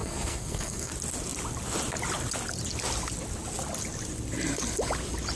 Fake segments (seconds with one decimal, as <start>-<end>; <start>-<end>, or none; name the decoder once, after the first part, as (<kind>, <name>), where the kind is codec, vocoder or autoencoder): 0.0-0.9 (codec, SNAC)